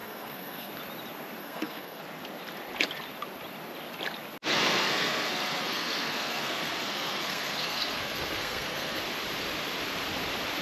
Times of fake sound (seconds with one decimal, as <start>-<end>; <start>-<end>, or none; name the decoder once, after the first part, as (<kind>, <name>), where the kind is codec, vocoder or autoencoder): 0.0-0.7 (codec, SNAC); 1.4-2.0; 4.5-9.0